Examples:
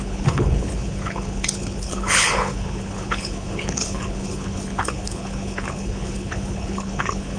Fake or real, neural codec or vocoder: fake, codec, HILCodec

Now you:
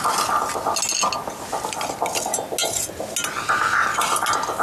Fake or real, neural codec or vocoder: real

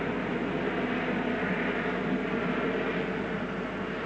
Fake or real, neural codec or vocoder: real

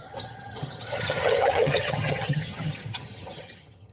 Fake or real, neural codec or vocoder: fake, vocoder, HiFi-GAN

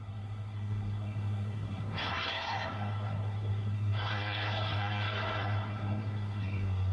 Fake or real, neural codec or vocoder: fake, codec, SNAC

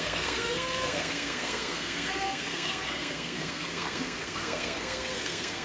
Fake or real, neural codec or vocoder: fake, codec, SNAC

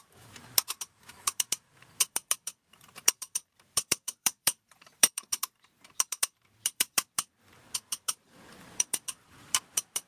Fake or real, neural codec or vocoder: fake, vocoder, BigVGAN v2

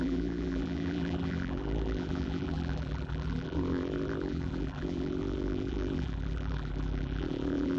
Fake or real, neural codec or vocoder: fake, vocoder, BigVGAN v2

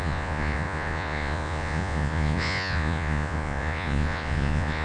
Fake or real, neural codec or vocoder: fake, vocoder, Vocos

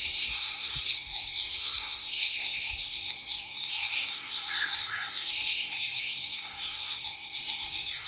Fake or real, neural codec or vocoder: fake, codec, SNAC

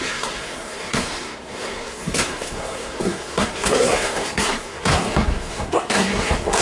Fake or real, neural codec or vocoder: fake, codec, SNAC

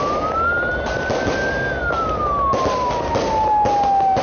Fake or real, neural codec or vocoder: real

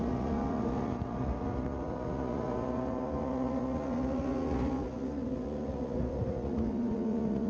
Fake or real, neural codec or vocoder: fake, vocoder, Vocos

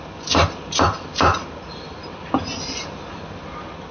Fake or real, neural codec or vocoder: real